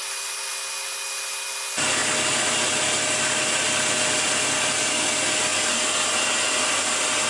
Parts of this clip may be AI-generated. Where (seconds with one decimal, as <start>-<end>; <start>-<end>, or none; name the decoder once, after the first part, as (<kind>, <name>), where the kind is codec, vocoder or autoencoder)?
none